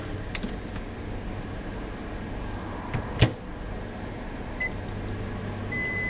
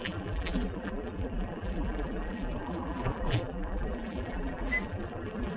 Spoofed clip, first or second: second